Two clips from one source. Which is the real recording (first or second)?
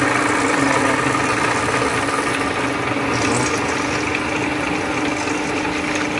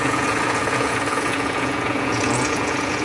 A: first